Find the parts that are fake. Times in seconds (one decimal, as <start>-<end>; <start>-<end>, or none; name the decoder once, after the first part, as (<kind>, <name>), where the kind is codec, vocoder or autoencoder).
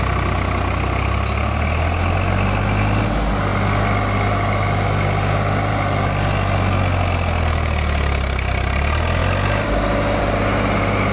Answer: none